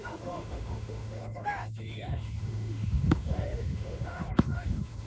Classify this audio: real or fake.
fake